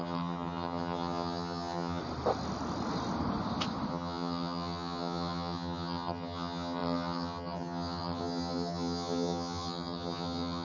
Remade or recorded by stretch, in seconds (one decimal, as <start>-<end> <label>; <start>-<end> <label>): 0.0-2.0 remade; 2.0-3.9 recorded; 3.9-10.6 remade